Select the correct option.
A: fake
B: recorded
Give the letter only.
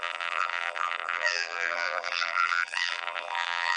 A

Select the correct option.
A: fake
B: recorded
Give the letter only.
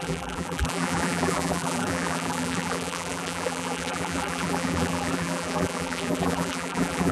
A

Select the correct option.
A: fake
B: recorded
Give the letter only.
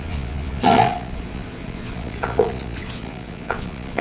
A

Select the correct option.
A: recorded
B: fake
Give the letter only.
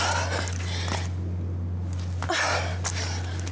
A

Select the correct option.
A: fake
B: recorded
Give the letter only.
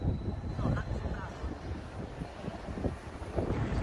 B